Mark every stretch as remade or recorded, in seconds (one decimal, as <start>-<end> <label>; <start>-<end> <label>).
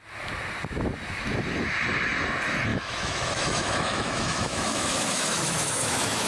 0.0-2.7 recorded; 2.7-6.3 remade